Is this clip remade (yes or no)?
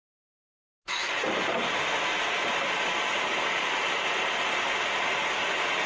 no